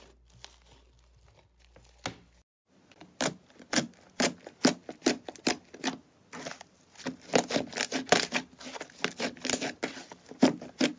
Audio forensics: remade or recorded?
recorded